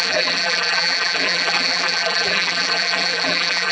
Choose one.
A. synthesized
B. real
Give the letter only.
A